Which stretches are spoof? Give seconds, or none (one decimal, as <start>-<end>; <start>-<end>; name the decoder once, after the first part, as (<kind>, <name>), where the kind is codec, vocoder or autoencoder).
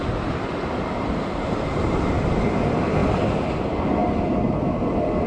0.0-3.0 (vocoder, BigVGAN v2); 3.6-5.3